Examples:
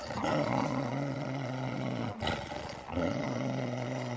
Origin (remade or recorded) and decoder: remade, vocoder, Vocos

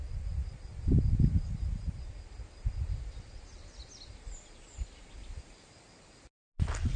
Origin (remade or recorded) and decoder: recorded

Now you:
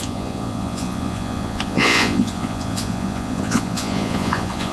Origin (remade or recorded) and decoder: remade, vocoder, Vocos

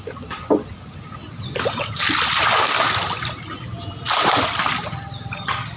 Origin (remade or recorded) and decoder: recorded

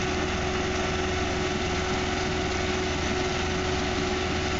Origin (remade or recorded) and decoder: recorded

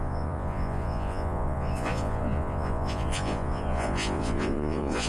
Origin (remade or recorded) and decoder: remade, vocoder, Vocos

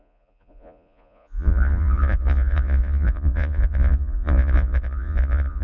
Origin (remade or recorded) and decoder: remade, vocoder, Vocos